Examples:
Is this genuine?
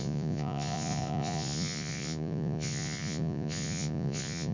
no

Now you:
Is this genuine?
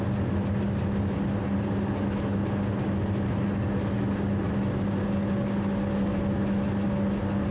yes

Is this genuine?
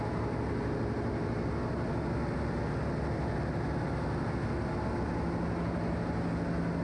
yes